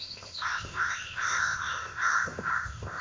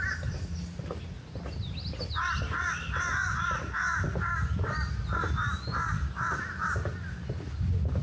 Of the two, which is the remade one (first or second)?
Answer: first